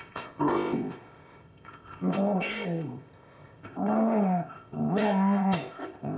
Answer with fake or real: fake